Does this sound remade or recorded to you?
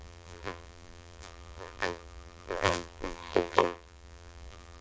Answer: remade